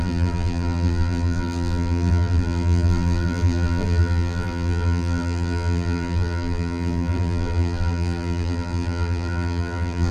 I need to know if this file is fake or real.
fake